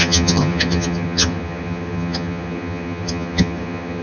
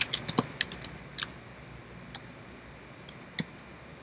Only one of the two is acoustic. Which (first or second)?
second